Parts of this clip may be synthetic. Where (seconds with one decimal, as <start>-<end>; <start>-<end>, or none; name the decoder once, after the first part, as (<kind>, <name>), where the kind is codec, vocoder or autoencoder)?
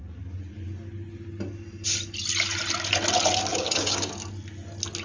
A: 3.5-4.1 (codec, DAC)